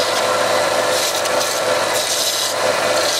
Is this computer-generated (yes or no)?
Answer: no